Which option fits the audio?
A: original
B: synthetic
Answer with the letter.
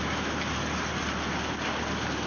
A